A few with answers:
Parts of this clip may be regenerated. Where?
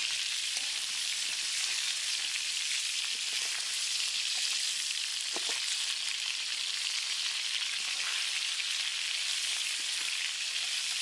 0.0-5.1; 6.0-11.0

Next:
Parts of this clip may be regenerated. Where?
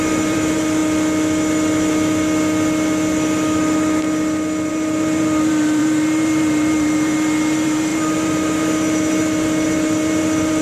0.0-0.8; 4.7-10.6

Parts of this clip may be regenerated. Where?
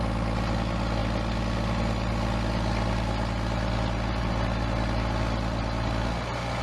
none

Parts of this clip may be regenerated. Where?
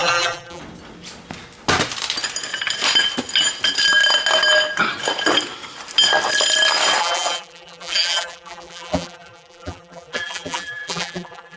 0.0-0.6; 7.0-11.6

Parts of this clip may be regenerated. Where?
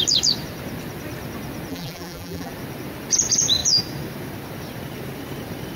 1.7-2.5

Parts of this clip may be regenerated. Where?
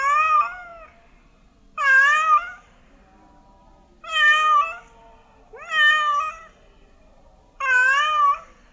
none